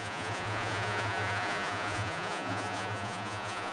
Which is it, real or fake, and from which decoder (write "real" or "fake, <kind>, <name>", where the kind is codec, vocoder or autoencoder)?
fake, vocoder, Vocos